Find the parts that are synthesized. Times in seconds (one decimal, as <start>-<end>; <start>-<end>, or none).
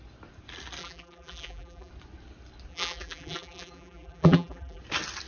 0.8-1.9; 2.7-4.8